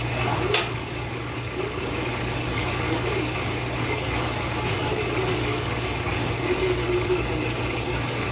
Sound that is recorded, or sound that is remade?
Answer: remade